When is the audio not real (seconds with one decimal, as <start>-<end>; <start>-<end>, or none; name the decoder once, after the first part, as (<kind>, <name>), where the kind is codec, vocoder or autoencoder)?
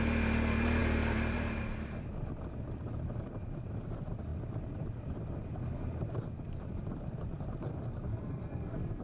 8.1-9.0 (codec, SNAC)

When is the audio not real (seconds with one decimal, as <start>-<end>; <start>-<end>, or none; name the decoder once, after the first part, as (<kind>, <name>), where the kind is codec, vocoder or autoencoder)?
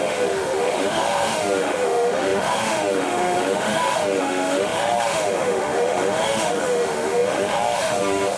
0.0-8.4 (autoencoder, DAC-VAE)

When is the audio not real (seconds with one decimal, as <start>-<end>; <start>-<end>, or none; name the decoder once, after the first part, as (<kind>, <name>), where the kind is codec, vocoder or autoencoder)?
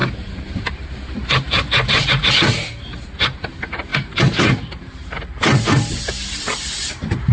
0.0-2.3 (vocoder, BigVGAN v2); 3.9-5.2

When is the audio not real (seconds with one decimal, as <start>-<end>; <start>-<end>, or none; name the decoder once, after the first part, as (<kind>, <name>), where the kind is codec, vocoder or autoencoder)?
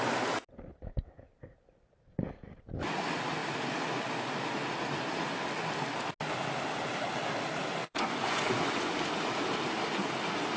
7.8-8.9 (vocoder, Vocos)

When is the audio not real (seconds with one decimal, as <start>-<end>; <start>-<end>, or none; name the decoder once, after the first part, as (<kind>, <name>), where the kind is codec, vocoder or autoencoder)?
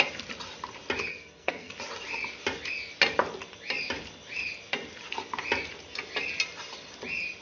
1.1-1.7 (codec, SNAC)